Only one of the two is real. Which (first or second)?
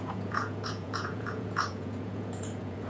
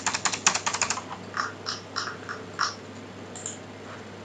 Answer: second